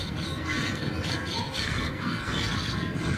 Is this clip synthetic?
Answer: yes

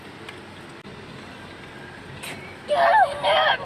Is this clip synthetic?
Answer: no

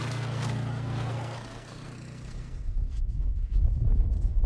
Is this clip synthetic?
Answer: yes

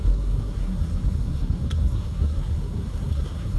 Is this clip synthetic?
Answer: yes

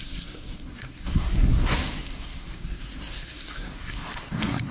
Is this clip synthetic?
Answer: yes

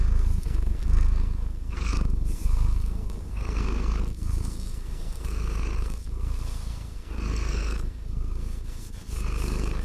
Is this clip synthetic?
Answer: yes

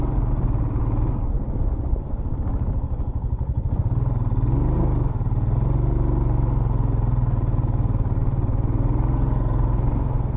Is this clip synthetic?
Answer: no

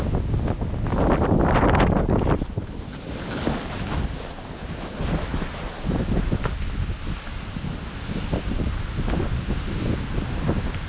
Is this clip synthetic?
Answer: no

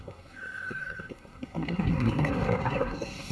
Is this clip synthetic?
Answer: yes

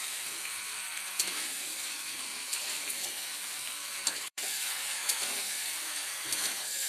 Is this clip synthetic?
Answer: yes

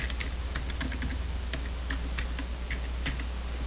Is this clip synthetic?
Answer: no